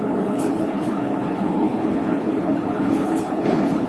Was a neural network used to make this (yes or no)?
yes